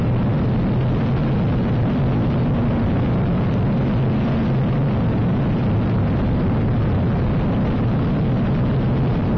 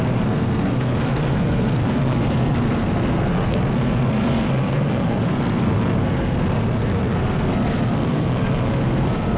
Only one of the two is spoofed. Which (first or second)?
second